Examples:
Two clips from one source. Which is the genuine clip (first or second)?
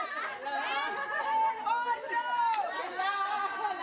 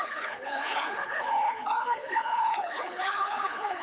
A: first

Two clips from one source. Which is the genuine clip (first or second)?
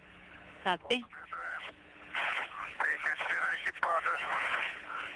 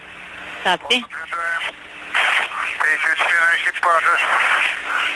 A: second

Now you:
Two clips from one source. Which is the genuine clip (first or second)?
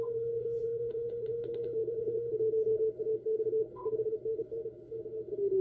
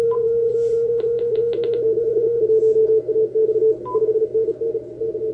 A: second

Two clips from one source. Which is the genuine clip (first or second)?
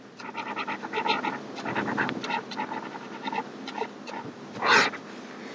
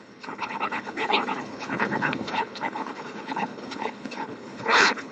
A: first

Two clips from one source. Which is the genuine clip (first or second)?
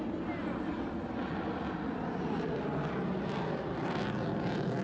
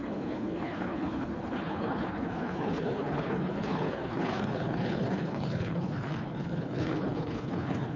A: first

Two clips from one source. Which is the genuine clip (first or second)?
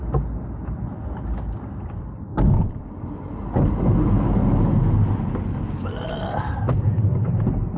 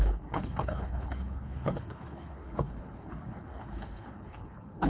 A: first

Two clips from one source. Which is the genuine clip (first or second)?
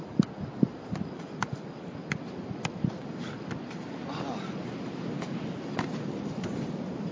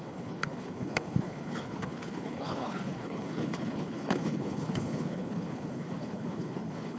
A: first